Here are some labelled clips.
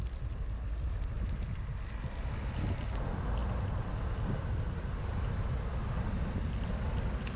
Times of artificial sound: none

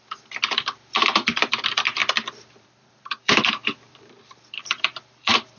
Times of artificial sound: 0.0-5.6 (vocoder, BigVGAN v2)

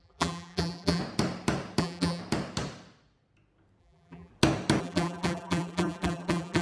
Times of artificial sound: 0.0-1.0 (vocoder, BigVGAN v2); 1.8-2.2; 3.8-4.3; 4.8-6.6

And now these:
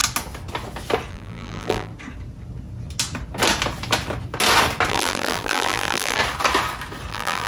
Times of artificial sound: 1.1-1.9 (vocoder, BigVGAN v2); 4.9-6.2; 7.1-7.5

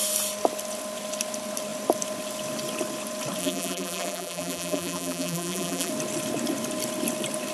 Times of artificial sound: 3.4-5.9 (vocoder, BigVGAN v2)